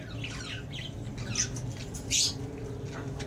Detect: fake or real real